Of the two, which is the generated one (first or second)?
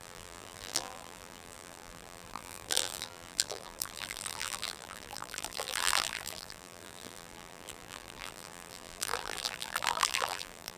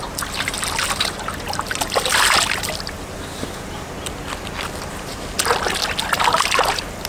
first